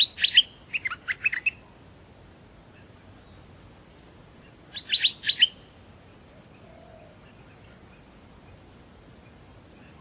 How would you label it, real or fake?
real